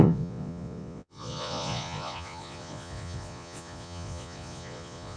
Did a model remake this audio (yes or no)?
yes